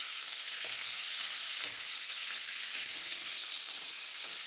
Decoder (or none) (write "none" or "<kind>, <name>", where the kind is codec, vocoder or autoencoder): codec, SNAC